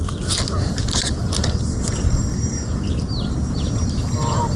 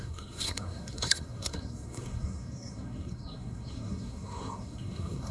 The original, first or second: first